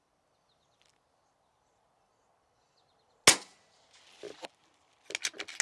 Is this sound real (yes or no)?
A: yes